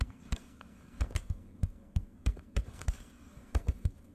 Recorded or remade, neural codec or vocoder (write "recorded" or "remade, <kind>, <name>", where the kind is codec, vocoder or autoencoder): remade, codec, SNAC